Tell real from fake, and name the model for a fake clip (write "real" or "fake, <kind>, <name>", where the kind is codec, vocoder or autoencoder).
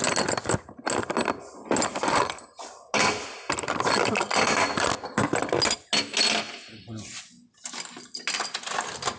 real